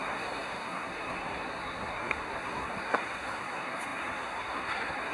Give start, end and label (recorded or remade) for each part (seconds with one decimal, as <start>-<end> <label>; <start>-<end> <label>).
0.0-5.1 remade